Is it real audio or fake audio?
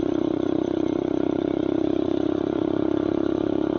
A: fake